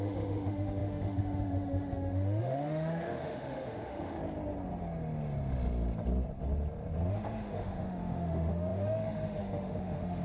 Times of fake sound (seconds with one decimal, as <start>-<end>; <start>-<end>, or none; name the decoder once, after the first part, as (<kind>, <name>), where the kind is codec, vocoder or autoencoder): 0.0-4.2 (autoencoder, DAC-VAE); 7.1-10.2